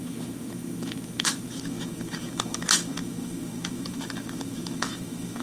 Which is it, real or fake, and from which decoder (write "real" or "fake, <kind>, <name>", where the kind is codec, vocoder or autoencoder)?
fake, autoencoder, DAC-VAE